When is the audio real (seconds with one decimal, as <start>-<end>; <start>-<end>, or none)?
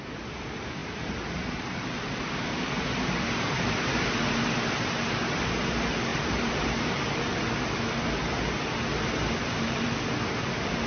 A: 0.0-0.8; 2.2-6.1; 7.5-9.4; 9.9-10.9